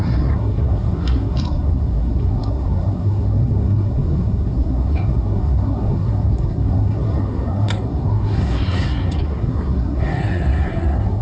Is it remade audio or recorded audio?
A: remade